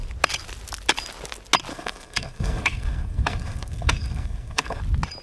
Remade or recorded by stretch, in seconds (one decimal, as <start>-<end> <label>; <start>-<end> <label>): 0.0-1.7 recorded; 1.7-4.8 remade; 4.8-5.2 recorded